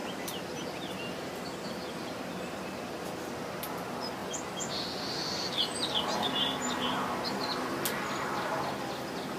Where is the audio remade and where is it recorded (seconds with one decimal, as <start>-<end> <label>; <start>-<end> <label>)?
0.0-9.4 recorded